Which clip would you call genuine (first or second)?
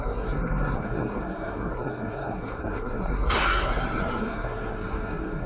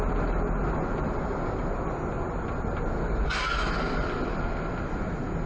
second